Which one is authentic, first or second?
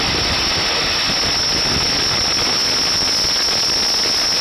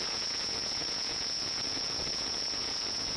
first